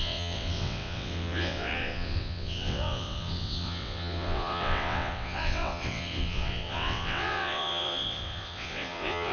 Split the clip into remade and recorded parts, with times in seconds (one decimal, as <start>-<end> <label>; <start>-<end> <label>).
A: 0.0-9.3 remade